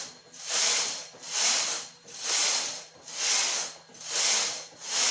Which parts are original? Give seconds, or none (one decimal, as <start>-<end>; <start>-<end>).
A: 2.4-4.4